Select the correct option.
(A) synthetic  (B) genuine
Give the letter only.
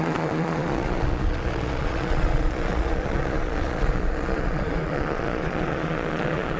A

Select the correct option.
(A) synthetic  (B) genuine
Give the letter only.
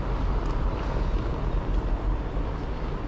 B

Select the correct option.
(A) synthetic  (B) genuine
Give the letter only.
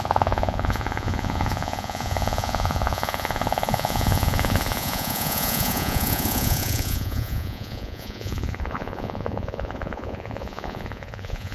A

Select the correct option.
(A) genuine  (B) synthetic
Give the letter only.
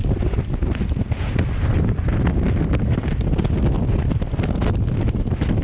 A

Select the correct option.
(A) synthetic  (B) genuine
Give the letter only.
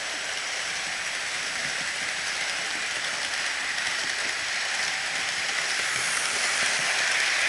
B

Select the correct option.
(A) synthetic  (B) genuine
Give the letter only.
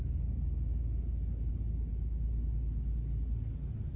B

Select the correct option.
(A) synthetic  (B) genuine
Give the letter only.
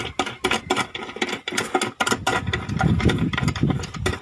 B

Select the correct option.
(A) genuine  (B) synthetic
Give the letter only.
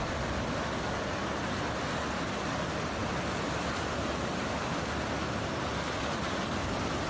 A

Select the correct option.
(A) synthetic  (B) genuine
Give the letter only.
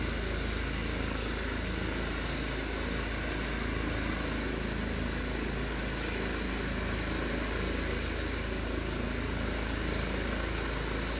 B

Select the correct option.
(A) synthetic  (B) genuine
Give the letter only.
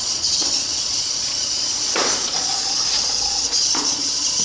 A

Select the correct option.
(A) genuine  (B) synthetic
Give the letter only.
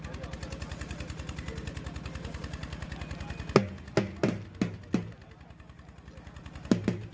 A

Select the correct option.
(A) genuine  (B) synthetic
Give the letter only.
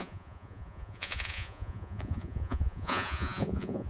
B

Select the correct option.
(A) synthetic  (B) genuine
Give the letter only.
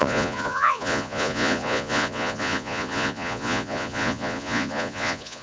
A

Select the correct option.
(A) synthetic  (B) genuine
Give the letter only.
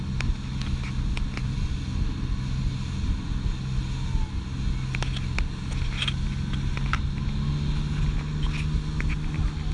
B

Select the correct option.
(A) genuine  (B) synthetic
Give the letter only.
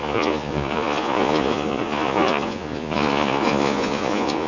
B